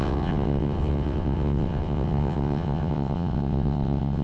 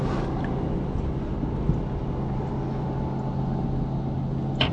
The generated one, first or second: first